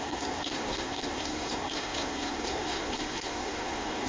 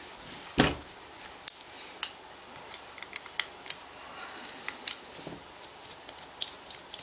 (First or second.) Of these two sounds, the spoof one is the first